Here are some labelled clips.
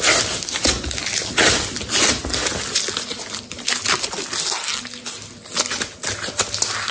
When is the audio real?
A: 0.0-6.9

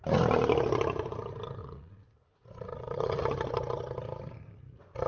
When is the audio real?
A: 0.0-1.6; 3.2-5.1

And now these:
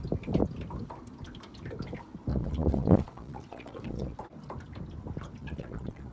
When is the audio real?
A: 0.0-2.3; 4.2-5.4

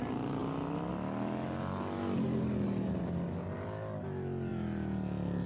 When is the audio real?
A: 0.0-5.5